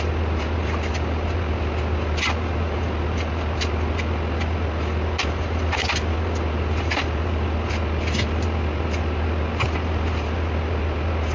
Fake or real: real